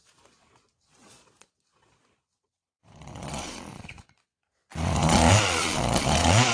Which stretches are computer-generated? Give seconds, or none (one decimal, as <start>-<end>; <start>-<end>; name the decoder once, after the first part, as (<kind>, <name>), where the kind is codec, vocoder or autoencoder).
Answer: 0.0-6.5 (vocoder, Vocos)